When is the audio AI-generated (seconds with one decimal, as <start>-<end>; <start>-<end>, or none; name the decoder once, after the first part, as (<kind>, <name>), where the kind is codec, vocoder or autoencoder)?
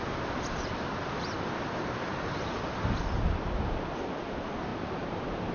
4.7-5.5 (vocoder, BigVGAN v2)